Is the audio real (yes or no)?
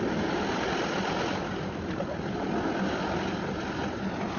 yes